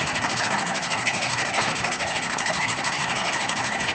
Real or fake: fake